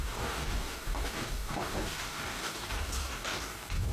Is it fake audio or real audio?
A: fake